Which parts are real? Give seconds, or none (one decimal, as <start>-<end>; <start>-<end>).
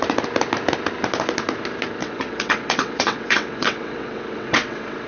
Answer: 0.0-2.0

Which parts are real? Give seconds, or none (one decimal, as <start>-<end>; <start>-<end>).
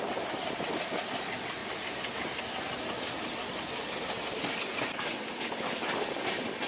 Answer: 0.0-6.7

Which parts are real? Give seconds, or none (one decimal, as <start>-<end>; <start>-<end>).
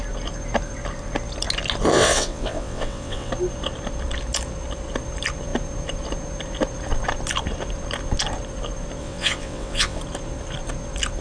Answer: 0.0-1.9; 3.3-9.0; 10.0-11.2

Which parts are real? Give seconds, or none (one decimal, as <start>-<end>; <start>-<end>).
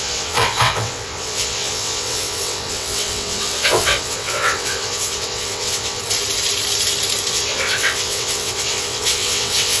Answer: 6.0-7.3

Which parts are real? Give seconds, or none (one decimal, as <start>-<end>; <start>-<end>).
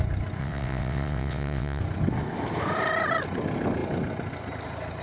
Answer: 0.0-0.4; 1.8-5.0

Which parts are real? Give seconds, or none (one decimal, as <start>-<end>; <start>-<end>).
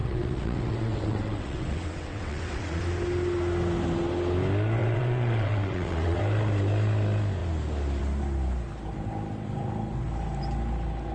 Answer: 2.8-4.8; 6.2-11.1